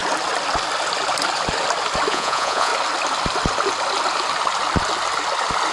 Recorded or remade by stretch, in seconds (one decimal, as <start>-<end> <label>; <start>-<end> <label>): 0.0-2.1 recorded; 2.1-2.7 remade; 2.7-5.7 recorded